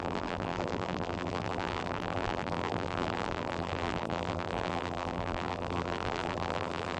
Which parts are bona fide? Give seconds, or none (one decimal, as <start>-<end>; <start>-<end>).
none